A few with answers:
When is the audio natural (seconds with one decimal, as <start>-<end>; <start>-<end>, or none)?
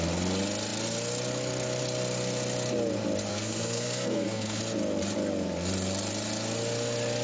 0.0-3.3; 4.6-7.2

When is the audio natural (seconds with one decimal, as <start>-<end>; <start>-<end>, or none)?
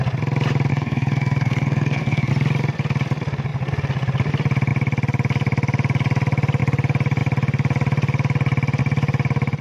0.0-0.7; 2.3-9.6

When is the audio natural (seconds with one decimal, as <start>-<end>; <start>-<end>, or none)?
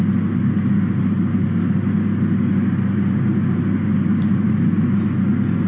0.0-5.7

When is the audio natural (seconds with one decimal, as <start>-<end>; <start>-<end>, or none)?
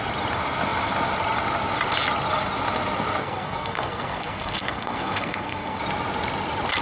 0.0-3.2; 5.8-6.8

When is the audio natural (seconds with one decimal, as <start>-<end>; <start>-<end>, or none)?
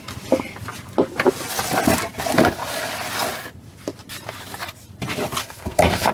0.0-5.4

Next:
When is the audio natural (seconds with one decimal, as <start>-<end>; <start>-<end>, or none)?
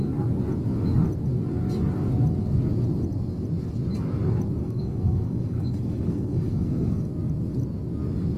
0.0-4.6; 7.1-8.4